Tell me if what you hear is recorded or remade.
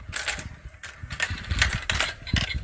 recorded